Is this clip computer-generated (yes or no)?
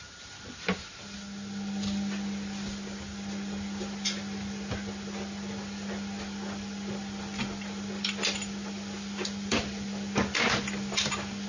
no